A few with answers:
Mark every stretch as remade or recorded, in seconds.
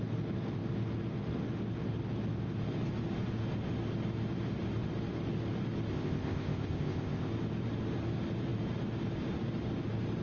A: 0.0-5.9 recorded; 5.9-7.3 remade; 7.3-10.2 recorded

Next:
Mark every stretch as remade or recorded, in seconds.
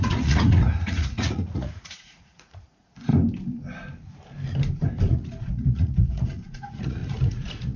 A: 0.0-3.1 remade; 3.1-5.1 recorded; 5.1-7.8 remade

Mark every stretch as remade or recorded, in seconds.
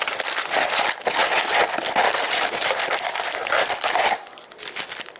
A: 0.0-5.2 recorded